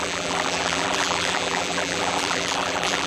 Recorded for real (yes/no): no